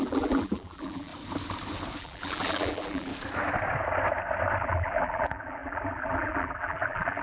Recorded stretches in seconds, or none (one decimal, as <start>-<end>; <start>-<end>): 1.1-2.0; 3.1-4.6